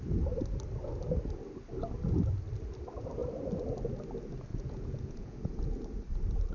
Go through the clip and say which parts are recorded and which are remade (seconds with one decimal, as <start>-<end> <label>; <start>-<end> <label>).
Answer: 0.0-4.5 recorded; 4.5-5.6 remade; 5.6-6.5 recorded